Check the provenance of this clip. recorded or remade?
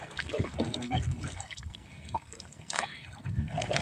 remade